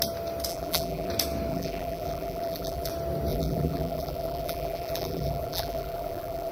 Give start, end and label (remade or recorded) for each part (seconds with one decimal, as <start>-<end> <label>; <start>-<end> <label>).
0.0-0.5 recorded; 0.5-1.1 remade; 1.1-1.5 recorded; 1.5-2.9 remade; 2.9-3.3 recorded; 3.3-6.5 remade